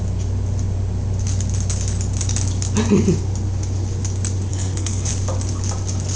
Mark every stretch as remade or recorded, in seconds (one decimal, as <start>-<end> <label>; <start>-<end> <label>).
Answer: 0.0-4.5 recorded; 4.5-5.1 remade; 5.1-6.2 recorded